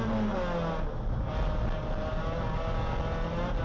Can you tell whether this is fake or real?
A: real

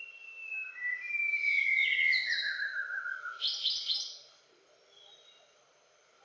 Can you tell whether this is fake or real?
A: real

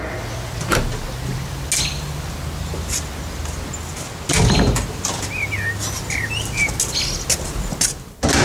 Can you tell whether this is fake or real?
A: real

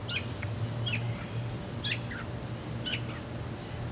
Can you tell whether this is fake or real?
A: real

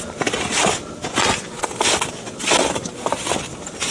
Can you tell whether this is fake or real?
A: real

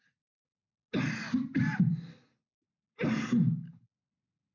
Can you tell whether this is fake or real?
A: real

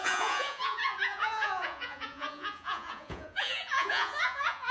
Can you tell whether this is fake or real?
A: fake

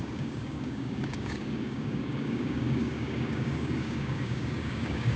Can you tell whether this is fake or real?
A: fake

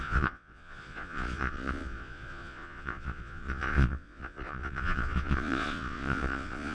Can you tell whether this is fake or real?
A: fake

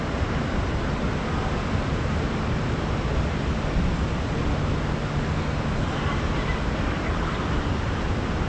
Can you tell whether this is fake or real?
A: real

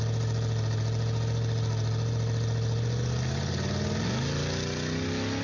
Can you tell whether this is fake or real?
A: real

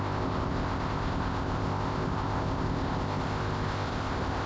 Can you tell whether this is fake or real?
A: fake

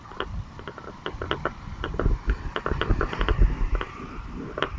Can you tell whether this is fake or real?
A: real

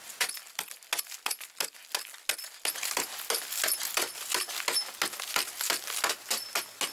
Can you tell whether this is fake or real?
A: real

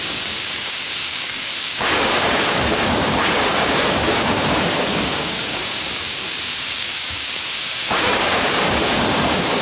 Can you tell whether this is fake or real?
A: fake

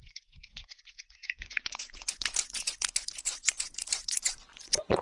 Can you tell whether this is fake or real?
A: fake